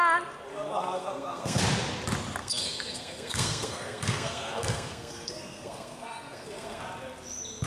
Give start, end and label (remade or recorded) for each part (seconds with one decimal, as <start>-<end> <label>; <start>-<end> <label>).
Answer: 0.0-0.5 recorded; 0.5-1.6 remade; 1.6-2.4 recorded; 2.4-6.8 remade; 6.8-7.7 recorded